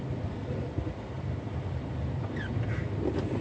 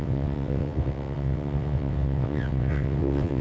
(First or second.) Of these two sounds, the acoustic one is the first